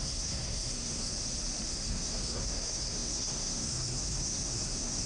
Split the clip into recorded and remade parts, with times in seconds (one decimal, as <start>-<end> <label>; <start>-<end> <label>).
0.0-1.1 remade; 1.1-1.7 recorded; 1.7-5.1 remade

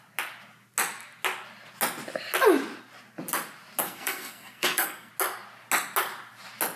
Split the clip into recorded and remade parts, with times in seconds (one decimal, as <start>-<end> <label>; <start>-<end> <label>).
0.0-3.8 recorded; 3.8-5.1 remade; 5.1-6.8 recorded